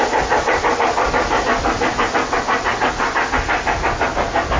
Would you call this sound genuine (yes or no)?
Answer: yes